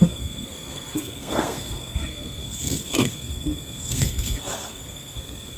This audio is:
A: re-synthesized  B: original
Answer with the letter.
A